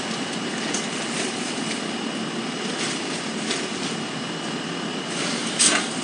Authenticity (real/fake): fake